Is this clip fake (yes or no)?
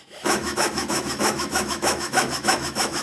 yes